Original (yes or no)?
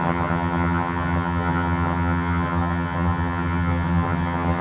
no